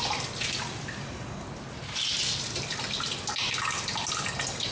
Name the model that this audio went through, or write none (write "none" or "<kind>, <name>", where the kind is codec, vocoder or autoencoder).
none